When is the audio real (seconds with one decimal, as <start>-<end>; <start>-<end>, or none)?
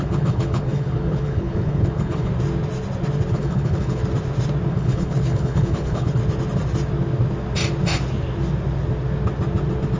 2.3-3.3; 4.0-4.7; 6.2-10.0